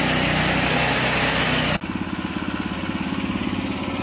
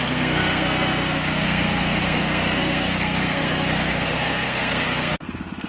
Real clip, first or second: first